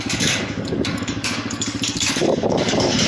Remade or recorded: remade